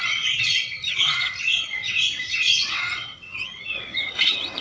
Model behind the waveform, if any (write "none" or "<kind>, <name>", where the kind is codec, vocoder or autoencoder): vocoder, WaveNeXt